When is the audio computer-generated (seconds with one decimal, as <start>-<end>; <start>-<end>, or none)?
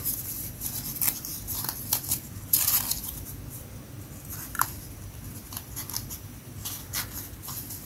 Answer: none